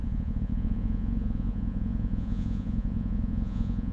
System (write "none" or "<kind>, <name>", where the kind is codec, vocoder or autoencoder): vocoder, Vocos